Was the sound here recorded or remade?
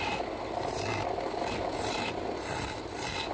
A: recorded